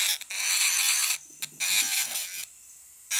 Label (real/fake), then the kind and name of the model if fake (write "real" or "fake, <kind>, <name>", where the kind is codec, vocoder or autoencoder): real